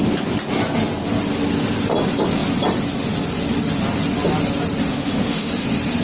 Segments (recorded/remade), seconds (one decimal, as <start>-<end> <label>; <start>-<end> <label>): 0.0-4.9 recorded; 4.9-5.5 remade; 5.5-6.0 recorded